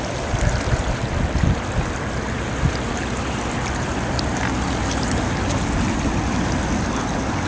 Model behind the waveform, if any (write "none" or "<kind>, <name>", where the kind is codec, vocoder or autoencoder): none